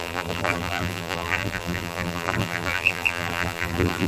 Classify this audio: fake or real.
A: fake